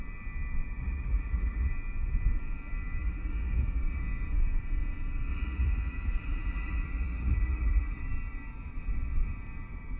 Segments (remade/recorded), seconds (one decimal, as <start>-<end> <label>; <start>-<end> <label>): 0.0-0.8 recorded; 0.8-1.7 remade; 1.7-3.0 recorded; 3.0-4.0 remade; 4.0-5.3 recorded; 5.3-8.0 remade; 8.0-10.0 recorded